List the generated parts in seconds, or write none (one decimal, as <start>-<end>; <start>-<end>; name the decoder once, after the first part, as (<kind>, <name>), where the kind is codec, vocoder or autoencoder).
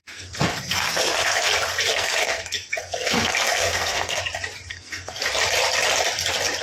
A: 0.0-1.5 (codec, SNAC); 1.9-4.2; 4.7-5.2